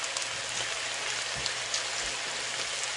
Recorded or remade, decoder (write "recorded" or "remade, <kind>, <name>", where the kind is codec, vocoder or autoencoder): recorded